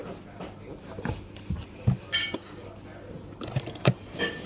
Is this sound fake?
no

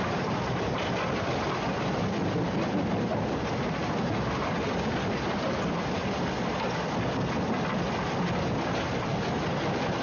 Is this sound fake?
no